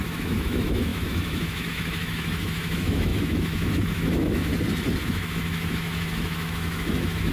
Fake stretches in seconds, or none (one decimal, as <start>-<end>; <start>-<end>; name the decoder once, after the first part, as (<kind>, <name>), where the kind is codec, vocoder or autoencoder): 0.0-4.5 (autoencoder, DAC-VAE); 5.0-7.3